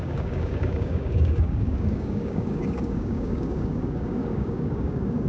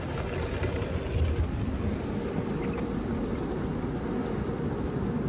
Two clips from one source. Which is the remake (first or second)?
first